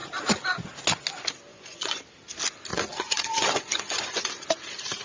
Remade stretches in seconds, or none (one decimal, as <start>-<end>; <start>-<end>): 1.5-2.0; 2.7-4.3